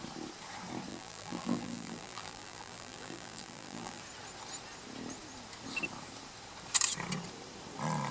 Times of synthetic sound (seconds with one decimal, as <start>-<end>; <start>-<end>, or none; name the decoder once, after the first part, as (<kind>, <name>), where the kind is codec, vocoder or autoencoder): 0.9-4.0 (vocoder, BigVGAN v2)